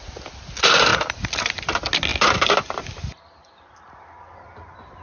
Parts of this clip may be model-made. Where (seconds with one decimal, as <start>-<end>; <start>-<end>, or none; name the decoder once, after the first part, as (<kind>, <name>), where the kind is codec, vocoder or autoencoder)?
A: none